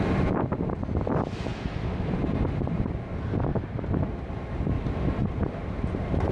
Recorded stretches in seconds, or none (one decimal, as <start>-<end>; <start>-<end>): 0.0-1.5; 2.8-3.5; 4.3-5.2